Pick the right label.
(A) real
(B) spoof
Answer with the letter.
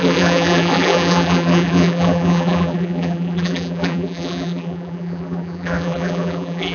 B